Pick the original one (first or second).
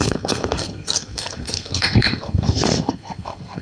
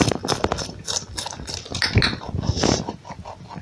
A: second